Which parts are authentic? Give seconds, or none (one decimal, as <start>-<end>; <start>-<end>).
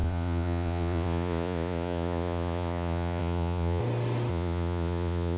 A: 3.8-4.3